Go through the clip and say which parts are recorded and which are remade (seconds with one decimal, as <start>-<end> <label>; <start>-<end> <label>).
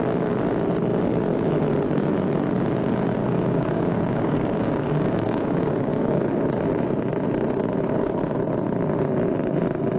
0.0-3.2 recorded; 3.2-6.4 remade; 6.4-10.0 recorded